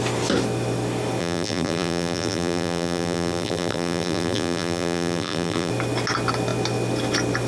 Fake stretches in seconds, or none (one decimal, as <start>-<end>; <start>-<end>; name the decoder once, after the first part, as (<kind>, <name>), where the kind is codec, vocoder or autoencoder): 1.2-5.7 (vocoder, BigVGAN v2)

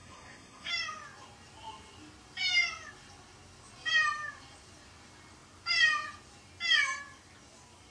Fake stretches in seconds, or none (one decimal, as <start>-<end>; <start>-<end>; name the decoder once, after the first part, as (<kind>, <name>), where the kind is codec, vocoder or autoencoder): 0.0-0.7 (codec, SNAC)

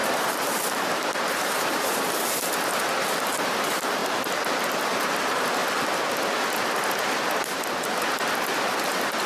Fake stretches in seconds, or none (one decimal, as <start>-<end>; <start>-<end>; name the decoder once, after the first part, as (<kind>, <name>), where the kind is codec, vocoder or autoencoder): 0.0-2.5 (vocoder, BigVGAN v2)

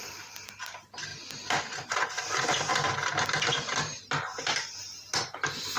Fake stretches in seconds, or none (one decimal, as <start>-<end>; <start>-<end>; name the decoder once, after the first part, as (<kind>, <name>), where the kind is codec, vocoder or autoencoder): none

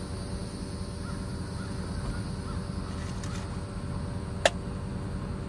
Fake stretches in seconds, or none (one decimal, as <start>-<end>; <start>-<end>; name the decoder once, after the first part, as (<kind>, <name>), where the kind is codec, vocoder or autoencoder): none

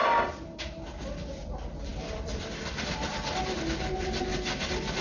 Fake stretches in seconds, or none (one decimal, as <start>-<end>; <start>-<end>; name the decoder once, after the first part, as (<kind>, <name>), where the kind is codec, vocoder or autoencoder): 1.9-3.1 (vocoder, BigVGAN v2); 4.3-5.0

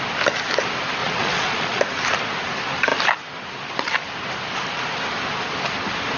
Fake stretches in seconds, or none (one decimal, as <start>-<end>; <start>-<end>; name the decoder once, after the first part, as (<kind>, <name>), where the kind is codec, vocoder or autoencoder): 1.0-1.8 (vocoder, Vocos)

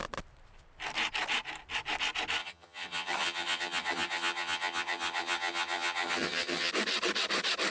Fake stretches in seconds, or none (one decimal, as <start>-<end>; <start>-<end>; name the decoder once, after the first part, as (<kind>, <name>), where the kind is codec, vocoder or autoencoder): 2.4-6.7 (vocoder, HiFi-GAN)